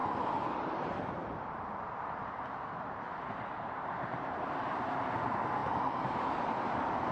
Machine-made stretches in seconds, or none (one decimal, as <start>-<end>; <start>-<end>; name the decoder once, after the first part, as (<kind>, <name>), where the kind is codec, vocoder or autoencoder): 0.7-7.1 (vocoder, BigVGAN v2)